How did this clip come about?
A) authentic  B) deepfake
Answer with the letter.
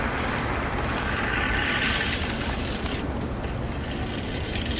A